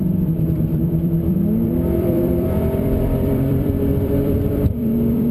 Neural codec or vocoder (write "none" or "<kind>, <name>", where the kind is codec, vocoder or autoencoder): vocoder, BigVGAN v2